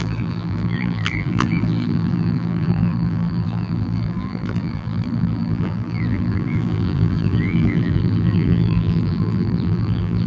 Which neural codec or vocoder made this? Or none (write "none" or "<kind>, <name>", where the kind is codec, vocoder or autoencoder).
vocoder, BigVGAN v2